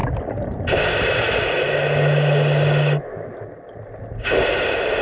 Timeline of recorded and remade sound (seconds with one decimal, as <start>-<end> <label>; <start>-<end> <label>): 0.0-5.0 recorded